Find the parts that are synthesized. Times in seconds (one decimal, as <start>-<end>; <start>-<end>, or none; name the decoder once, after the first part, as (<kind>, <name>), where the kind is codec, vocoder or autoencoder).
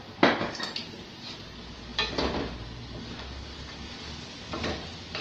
none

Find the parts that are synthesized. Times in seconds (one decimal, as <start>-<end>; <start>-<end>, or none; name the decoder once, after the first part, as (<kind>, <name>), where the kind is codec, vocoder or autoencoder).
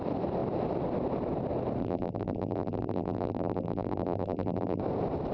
1.8-4.8 (vocoder, BigVGAN v2)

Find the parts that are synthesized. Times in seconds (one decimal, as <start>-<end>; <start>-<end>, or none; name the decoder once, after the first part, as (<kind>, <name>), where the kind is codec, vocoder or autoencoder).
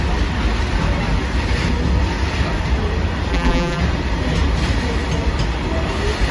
3.3-3.8 (vocoder, BigVGAN v2)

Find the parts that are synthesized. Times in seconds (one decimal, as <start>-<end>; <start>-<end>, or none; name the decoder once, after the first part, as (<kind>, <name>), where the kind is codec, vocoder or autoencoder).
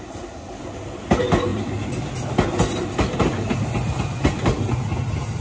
none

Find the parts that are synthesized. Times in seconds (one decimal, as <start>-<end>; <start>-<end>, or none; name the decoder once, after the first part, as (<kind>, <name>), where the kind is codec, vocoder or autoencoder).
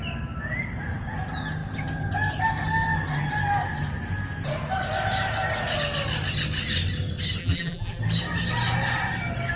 7.4-8.0 (vocoder, BigVGAN v2)